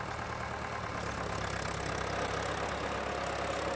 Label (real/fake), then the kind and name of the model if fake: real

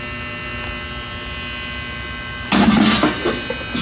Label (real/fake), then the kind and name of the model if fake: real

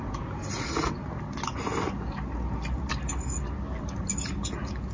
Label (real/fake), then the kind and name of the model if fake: real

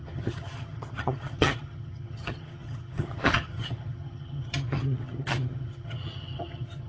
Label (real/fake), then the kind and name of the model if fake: fake, vocoder, HiFi-GAN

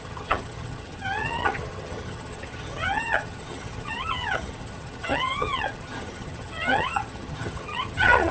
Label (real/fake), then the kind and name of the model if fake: fake, vocoder, HiFi-GAN